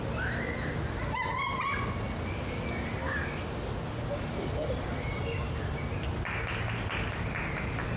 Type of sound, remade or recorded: recorded